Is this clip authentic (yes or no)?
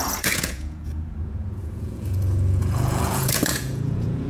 no